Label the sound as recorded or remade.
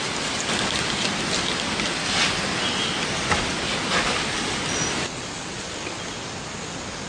recorded